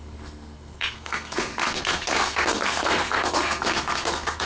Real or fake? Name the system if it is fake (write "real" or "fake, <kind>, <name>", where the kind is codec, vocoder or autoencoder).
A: fake, codec, SNAC